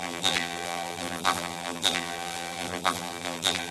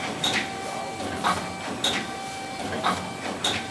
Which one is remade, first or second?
first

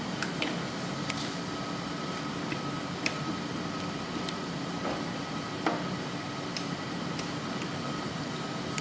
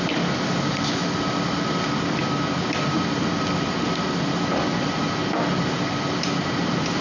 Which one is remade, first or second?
first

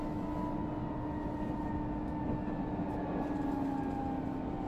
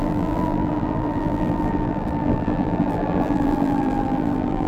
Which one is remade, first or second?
second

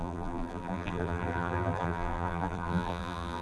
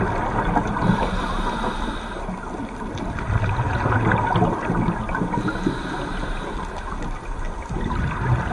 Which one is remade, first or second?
first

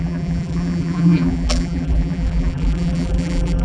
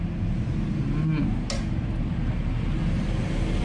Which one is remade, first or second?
first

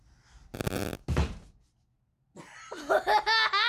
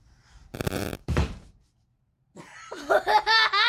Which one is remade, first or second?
second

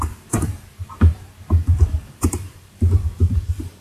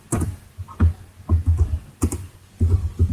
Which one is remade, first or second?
first